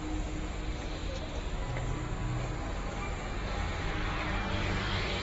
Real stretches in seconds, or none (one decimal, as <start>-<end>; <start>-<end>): 0.0-5.2